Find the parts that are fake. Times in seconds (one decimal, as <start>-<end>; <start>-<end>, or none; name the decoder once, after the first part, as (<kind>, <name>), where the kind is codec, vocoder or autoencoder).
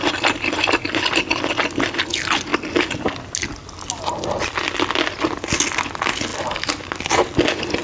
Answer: none